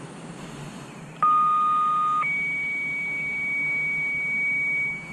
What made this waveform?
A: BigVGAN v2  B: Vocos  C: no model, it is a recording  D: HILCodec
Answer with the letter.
C